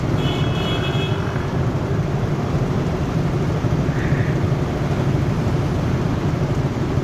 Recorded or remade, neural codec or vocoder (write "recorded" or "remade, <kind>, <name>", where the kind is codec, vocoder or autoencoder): recorded